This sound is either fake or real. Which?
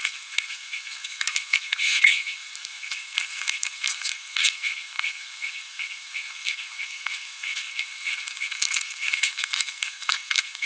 fake